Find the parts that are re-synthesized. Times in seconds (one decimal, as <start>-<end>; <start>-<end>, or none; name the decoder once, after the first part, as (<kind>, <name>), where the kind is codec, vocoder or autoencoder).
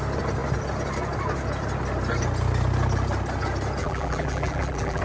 3.8-5.0 (vocoder, BigVGAN v2)